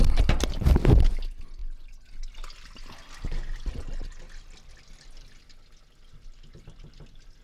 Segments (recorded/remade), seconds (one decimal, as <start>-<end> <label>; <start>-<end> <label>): 0.0-7.4 recorded